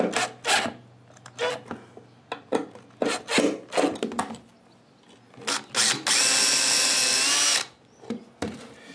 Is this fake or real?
real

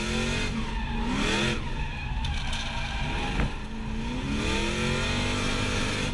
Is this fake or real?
real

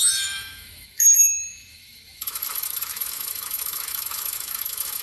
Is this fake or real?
fake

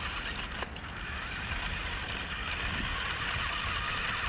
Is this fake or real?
real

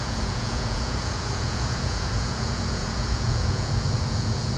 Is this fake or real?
fake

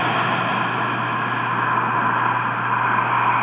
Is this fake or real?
real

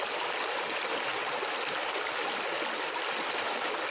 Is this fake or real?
real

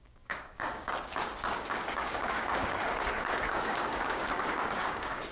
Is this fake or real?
fake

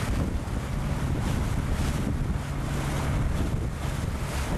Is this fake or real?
real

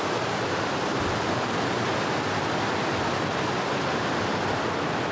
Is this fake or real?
real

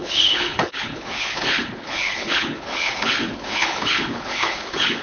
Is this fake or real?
fake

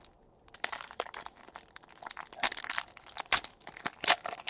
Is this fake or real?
real